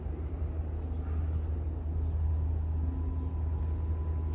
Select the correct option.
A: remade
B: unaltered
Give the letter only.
B